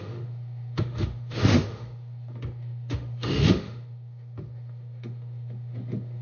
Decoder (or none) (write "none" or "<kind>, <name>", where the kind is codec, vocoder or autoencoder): autoencoder, DAC-VAE